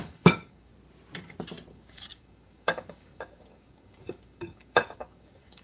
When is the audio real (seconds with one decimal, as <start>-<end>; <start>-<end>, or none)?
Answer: 0.7-1.7